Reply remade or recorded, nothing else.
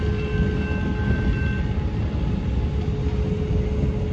recorded